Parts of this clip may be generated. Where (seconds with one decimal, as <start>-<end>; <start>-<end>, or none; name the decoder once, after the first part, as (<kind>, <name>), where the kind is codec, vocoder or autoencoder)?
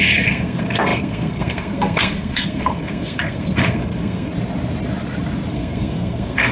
0.0-4.3 (codec, SNAC); 5.5-6.5